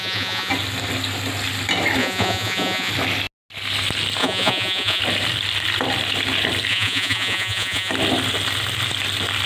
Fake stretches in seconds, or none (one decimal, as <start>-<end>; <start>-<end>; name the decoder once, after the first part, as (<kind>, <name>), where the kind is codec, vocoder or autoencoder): 0.0-0.5 (vocoder, Vocos); 2.0-2.9; 4.2-5.0; 6.7-7.9